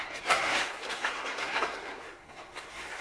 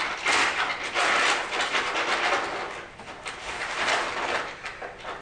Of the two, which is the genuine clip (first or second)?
second